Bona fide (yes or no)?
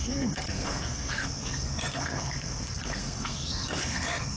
no